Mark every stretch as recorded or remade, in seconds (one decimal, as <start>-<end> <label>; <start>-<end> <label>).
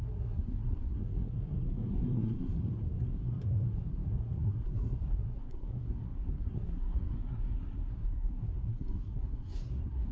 0.0-10.1 remade